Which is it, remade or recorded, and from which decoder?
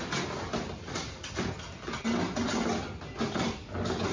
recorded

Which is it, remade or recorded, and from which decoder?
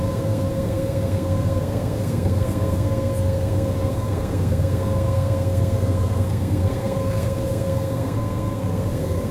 remade, codec, SNAC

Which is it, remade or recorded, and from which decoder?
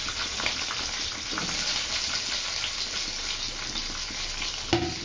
recorded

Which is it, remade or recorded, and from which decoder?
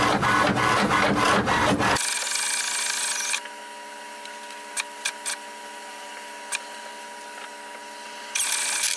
recorded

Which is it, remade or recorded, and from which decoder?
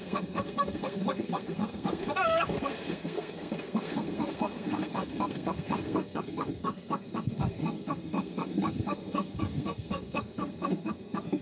remade, codec, SNAC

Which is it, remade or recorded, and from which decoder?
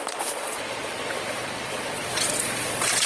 remade, vocoder, Vocos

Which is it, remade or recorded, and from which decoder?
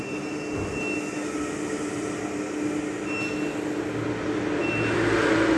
recorded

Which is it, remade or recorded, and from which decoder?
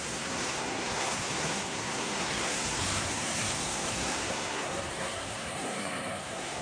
remade, codec, SNAC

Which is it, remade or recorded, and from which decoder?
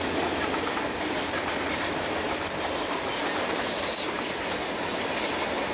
recorded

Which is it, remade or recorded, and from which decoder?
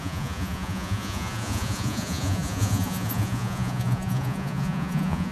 remade, vocoder, Vocos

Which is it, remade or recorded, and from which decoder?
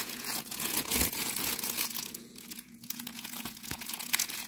remade, vocoder, Vocos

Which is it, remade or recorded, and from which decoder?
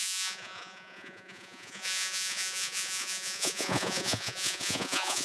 remade, vocoder, Vocos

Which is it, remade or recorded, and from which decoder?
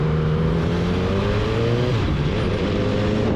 recorded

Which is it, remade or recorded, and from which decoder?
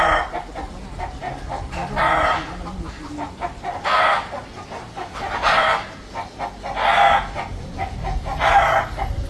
recorded